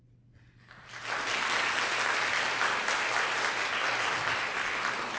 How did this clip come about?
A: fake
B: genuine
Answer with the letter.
B